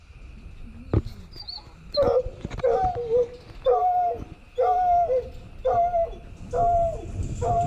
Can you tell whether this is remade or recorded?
recorded